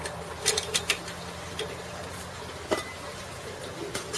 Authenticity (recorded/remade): recorded